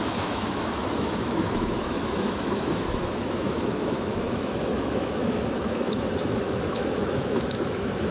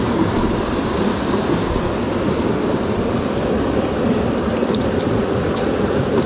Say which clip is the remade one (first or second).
first